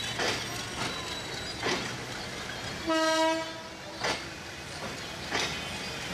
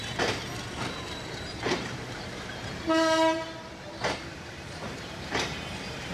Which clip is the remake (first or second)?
second